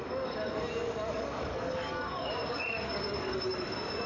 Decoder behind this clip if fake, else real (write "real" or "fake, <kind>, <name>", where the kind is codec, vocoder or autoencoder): fake, codec, DAC